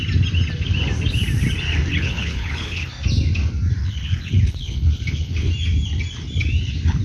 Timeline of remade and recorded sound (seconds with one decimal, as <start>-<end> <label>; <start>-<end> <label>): 0.0-1.9 recorded; 1.9-2.9 remade; 2.9-3.8 recorded; 3.8-5.5 remade; 5.5-7.0 recorded

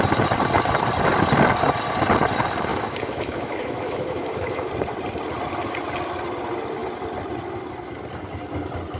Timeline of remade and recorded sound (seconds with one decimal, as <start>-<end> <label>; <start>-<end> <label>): 0.0-2.7 recorded; 2.7-4.7 remade; 4.7-9.0 recorded